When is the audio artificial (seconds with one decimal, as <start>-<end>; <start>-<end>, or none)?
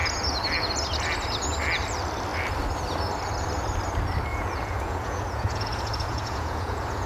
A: 4.3-7.1